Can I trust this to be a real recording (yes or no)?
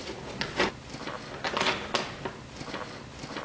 yes